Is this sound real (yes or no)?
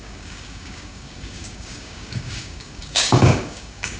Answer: no